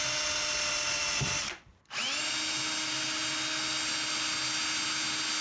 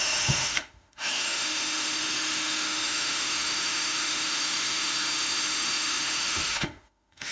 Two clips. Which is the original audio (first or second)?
first